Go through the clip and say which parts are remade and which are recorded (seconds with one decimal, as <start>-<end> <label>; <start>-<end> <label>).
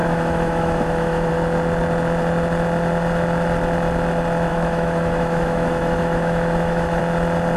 0.0-1.3 remade; 1.3-4.5 recorded; 4.5-7.0 remade; 7.0-7.6 recorded